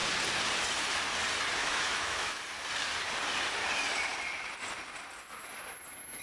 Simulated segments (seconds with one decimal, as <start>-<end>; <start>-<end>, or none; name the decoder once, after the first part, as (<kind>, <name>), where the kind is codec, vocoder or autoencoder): 1.6-2.4 (autoencoder, DAC-VAE)